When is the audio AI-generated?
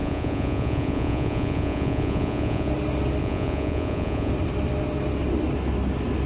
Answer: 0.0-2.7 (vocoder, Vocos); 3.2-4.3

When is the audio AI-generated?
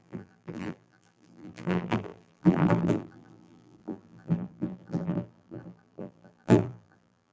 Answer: 0.0-7.3 (vocoder, BigVGAN v2)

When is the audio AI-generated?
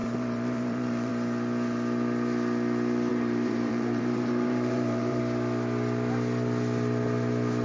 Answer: 0.0-1.1 (vocoder, BigVGAN v2); 3.1-5.2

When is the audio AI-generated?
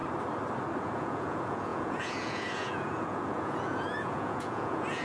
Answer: 0.8-5.0 (vocoder, Vocos)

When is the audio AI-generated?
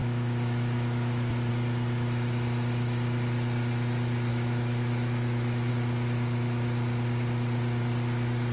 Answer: 0.0-1.5 (autoencoder, DAC-VAE); 4.3-5.7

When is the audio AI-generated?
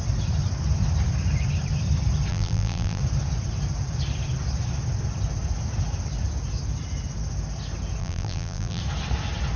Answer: 2.3-3.0 (vocoder, BigVGAN v2); 8.0-8.8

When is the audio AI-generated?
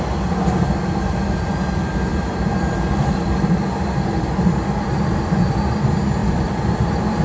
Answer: 2.1-5.3 (vocoder, BigVGAN v2); 6.2-7.2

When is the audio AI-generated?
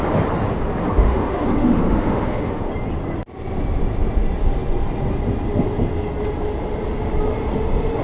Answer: 0.9-2.7 (autoencoder, DAC-VAE)